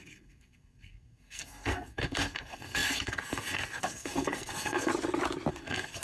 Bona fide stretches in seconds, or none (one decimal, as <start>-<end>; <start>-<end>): 4.9-5.5